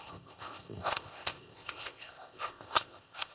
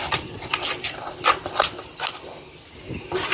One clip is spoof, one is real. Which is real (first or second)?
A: second